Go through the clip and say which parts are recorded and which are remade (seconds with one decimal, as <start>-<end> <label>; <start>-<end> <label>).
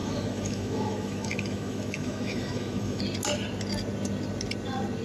0.0-3.0 remade; 3.0-5.0 recorded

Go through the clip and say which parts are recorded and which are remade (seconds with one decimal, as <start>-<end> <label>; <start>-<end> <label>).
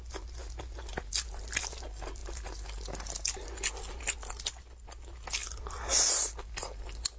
0.0-5.4 recorded; 5.4-6.2 remade; 6.2-7.2 recorded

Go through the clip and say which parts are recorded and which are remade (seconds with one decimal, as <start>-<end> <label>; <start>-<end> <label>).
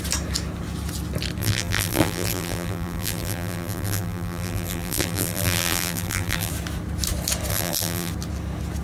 0.0-1.4 recorded; 1.4-6.5 remade; 6.5-7.5 recorded; 7.5-8.1 remade; 8.1-8.8 recorded